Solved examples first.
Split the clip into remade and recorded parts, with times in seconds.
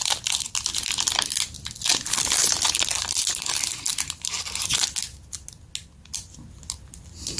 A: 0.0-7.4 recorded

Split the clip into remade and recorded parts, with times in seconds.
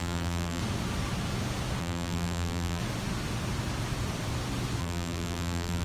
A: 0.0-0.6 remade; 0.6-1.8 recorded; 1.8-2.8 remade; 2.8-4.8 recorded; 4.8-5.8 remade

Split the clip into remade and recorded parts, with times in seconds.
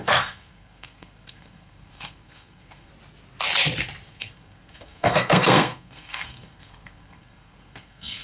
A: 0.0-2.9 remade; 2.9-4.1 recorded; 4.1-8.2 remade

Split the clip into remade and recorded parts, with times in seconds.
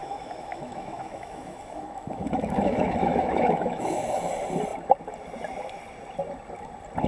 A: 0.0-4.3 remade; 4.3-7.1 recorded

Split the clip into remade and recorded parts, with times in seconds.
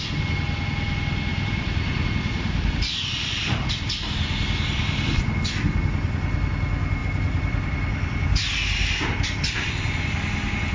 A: 0.0-1.3 recorded; 1.3-5.4 remade; 5.4-7.0 recorded; 7.0-9.7 remade; 9.7-10.7 recorded